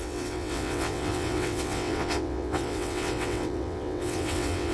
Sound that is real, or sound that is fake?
fake